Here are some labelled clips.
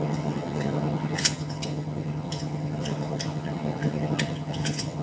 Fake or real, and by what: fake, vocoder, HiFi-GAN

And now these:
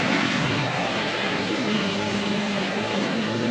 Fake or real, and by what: fake, codec, SNAC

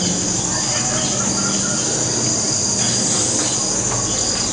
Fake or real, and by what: real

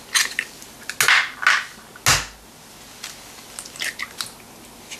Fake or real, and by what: real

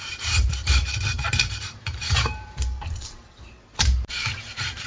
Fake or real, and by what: fake, vocoder, BigVGAN v2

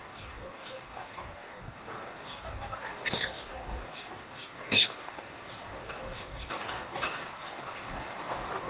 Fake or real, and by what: fake, codec, DAC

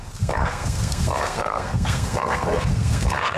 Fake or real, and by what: fake, codec, SNAC